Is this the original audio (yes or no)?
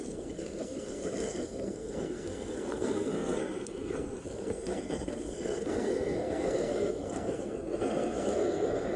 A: no